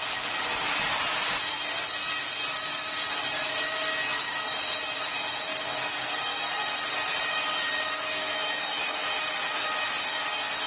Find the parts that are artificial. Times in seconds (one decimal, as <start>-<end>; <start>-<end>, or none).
none